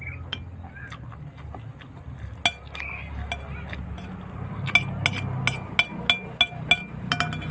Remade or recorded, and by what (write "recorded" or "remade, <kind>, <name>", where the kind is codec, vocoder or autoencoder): recorded